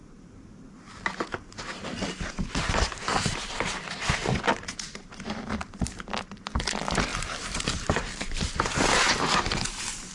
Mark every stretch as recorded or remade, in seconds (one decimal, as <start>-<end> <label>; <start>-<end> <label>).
0.0-1.3 recorded; 1.3-1.9 remade; 1.9-3.3 recorded; 3.3-5.6 remade; 5.6-6.2 recorded; 6.2-10.1 remade